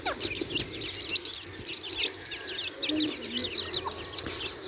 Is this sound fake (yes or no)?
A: no